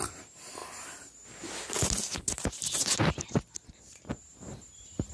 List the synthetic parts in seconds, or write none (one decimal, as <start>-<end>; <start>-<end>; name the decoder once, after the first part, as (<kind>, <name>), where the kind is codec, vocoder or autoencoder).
none